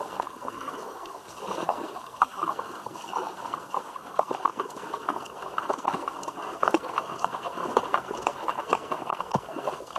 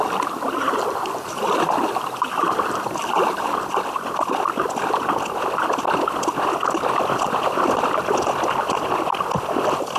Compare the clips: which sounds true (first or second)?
second